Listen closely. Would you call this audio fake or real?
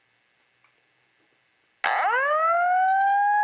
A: real